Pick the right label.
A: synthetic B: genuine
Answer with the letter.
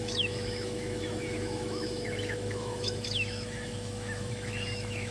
A